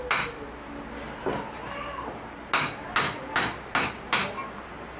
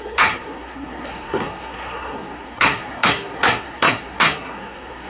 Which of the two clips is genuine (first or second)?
first